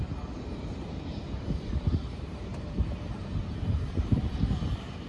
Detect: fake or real fake